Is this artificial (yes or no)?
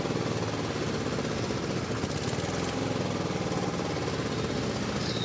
no